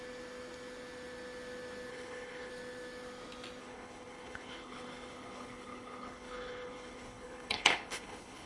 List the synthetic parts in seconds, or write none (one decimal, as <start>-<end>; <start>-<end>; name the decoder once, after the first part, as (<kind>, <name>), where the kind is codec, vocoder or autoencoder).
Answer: 1.9-2.5 (codec, HILCodec); 3.6-8.5